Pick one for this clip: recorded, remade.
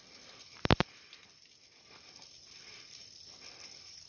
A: recorded